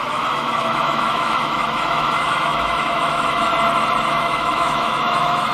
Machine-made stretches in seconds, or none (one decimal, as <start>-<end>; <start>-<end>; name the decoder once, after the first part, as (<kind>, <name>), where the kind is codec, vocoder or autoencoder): 0.0-3.5 (autoencoder, DAC-VAE); 4.1-5.5